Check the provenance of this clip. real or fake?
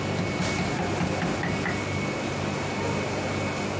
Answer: real